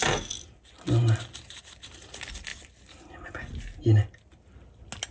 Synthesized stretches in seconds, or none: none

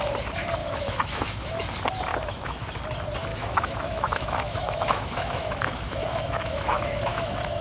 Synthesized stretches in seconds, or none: 0.6-1.5 (autoencoder, DAC-VAE); 2.1-2.7; 3.3-7.6

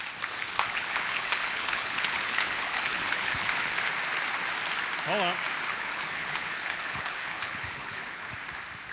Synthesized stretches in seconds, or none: 0.4-3.9 (codec, HILCodec); 5.7-8.3